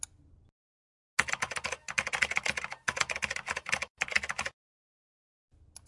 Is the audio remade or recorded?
recorded